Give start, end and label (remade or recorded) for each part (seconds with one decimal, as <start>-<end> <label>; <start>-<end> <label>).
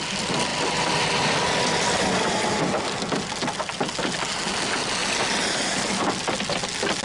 0.0-7.0 recorded